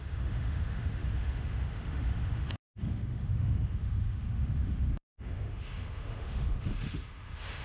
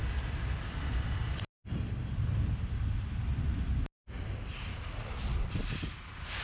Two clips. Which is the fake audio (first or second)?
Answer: first